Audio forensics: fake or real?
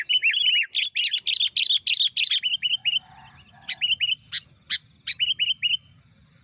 real